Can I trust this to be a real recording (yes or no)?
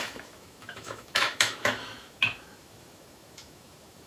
no